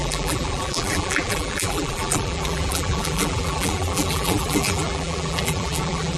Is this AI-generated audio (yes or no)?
yes